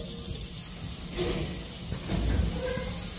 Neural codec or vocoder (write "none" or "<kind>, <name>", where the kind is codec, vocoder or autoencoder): none